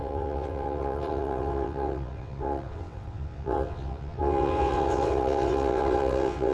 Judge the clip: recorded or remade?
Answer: remade